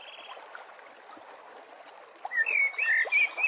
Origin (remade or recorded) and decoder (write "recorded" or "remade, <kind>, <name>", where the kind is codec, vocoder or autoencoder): recorded